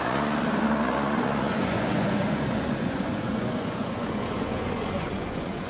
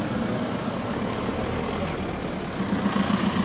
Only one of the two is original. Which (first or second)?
second